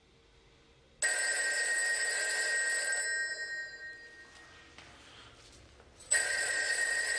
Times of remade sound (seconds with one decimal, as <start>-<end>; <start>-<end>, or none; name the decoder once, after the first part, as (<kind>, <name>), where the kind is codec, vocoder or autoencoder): 6.0-7.2 (vocoder, Vocos)